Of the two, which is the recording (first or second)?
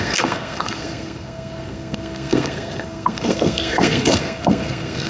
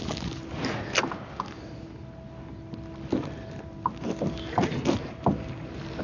second